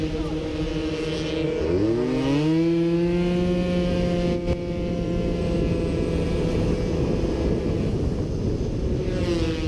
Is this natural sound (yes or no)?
yes